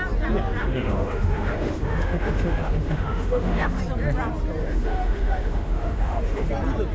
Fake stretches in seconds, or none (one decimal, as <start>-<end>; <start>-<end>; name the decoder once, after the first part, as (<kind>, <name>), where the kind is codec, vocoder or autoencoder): 0.6-3.8 (autoencoder, DAC-VAE); 4.6-6.5